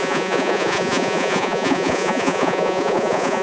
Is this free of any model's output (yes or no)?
no